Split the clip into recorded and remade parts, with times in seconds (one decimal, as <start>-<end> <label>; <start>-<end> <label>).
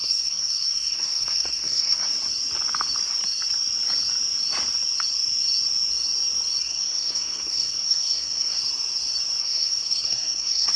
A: 0.0-2.1 remade; 2.1-6.6 recorded; 6.6-8.6 remade; 8.6-9.4 recorded; 9.4-10.8 remade